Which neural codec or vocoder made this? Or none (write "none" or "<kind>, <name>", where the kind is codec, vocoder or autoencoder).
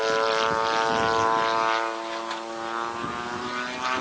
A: none